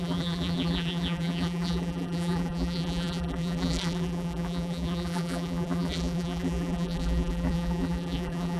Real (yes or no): no